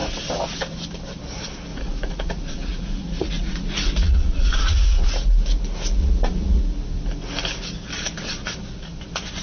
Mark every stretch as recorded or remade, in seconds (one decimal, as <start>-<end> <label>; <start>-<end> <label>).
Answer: 0.0-1.7 recorded; 1.7-5.1 remade; 5.1-6.0 recorded; 6.0-6.6 remade; 6.6-9.4 recorded